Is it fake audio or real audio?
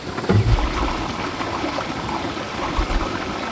real